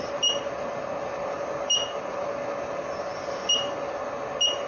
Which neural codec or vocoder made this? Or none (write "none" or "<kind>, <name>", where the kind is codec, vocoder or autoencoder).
none